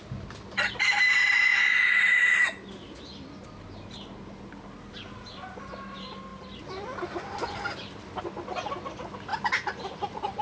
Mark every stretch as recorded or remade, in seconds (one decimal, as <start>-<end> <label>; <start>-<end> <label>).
0.0-6.3 recorded; 6.3-8.2 remade; 8.2-9.3 recorded; 9.3-10.4 remade